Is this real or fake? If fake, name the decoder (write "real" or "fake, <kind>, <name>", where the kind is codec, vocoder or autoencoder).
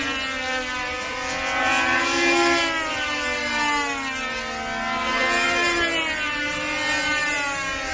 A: real